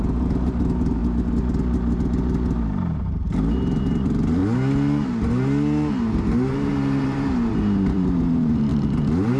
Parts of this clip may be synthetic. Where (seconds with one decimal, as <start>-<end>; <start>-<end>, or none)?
0.0-1.0; 3.0-4.4; 6.0-9.4